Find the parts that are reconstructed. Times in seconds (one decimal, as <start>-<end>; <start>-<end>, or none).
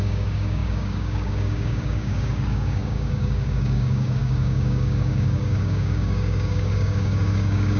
0.0-7.8